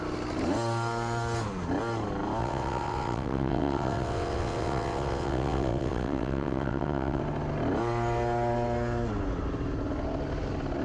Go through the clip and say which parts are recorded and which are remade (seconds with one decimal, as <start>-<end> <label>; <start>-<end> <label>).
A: 0.0-2.4 recorded; 2.4-7.2 remade; 7.2-10.8 recorded